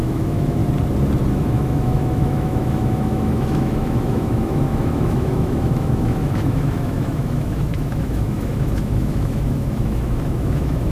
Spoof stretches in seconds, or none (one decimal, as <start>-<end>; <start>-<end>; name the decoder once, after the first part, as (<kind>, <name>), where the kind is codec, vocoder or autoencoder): 0.0-0.6 (autoencoder, DAC-VAE); 1.3-10.9